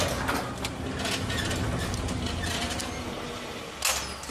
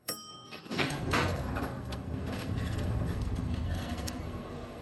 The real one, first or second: first